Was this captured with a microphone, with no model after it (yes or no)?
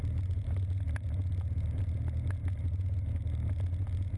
yes